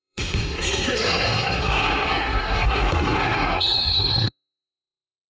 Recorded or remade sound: remade